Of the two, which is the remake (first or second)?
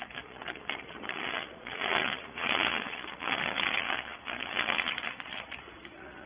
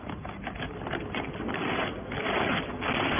first